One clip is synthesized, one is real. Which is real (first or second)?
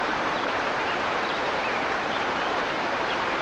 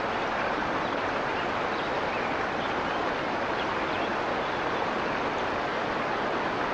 second